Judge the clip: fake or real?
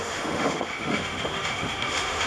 fake